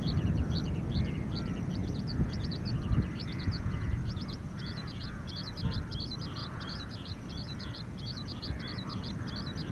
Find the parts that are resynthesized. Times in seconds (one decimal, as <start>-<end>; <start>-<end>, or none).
1.8-2.8; 3.2-5.5; 6.4-8.6